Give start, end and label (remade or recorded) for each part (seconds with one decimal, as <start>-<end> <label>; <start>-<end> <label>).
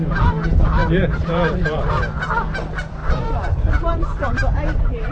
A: 0.0-0.8 recorded; 0.8-2.2 remade; 2.2-3.0 recorded; 3.0-4.3 remade; 4.3-5.1 recorded